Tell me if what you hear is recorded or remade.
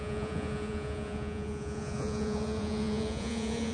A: remade